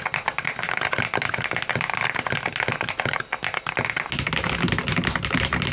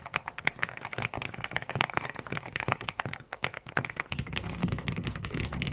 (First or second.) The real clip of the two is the first